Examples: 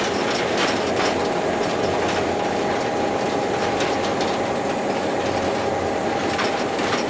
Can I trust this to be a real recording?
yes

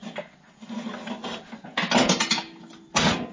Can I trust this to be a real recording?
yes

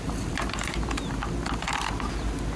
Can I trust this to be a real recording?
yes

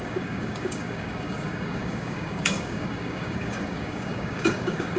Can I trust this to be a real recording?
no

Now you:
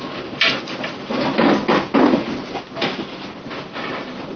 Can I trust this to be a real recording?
yes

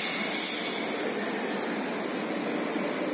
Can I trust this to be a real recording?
yes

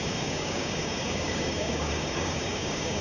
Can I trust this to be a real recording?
no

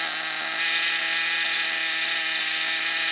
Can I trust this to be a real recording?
yes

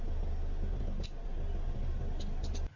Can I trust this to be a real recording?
yes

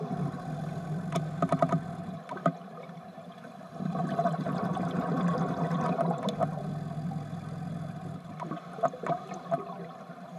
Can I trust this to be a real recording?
yes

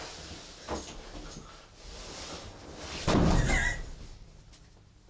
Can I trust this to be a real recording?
yes